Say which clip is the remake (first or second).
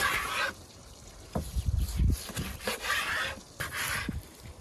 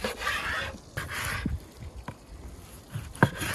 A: first